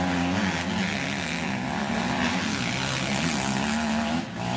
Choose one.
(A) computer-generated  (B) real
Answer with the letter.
B